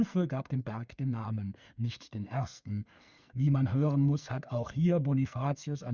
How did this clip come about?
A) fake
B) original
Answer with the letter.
A